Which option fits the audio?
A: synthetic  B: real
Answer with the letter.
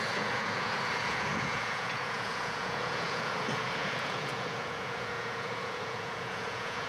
A